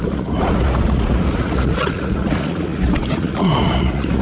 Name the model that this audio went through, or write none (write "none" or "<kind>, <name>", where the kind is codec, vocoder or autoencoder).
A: vocoder, Vocos